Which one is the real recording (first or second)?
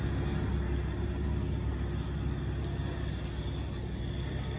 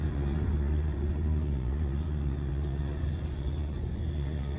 first